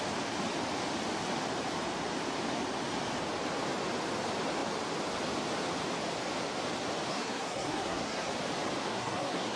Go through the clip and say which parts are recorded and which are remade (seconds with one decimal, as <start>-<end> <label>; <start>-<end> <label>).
0.0-7.1 recorded; 7.1-8.3 remade; 8.3-8.9 recorded; 8.9-9.6 remade